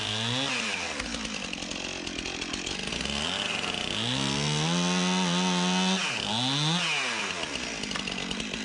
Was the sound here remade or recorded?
recorded